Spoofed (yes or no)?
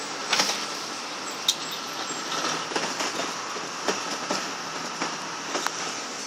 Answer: no